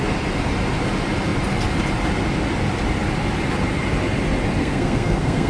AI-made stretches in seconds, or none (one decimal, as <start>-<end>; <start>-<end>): 4.6-5.5